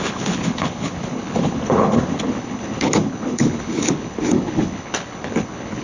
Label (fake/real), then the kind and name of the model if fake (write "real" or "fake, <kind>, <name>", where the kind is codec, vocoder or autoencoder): fake, codec, HILCodec